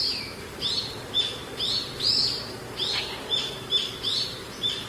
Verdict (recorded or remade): remade